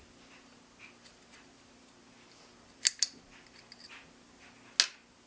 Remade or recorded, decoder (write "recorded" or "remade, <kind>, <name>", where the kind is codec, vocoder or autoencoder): recorded